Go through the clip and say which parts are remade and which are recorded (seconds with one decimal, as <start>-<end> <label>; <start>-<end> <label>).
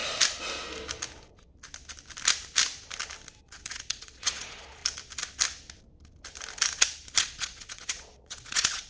0.0-3.4 recorded; 3.4-4.8 remade; 4.8-7.2 recorded; 7.2-8.9 remade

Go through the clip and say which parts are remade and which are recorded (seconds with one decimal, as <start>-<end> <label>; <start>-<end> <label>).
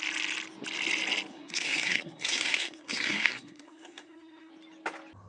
0.0-1.3 recorded; 1.3-4.5 remade; 4.5-5.3 recorded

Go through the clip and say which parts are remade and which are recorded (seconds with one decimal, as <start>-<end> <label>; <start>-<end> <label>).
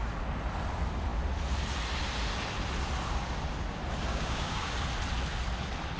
0.0-4.1 recorded; 4.1-4.7 remade; 4.7-6.0 recorded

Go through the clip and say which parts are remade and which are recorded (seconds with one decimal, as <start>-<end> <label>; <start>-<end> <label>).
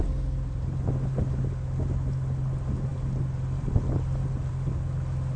0.0-5.4 recorded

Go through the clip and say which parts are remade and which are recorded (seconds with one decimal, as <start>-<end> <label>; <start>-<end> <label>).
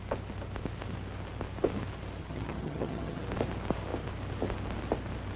0.0-2.2 recorded; 2.2-3.2 remade; 3.2-5.4 recorded